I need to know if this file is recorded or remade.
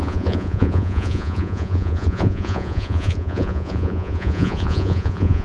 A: remade